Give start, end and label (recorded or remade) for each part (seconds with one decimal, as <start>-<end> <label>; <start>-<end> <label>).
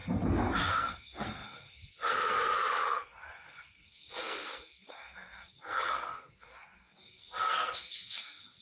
0.0-0.7 recorded; 0.7-8.6 remade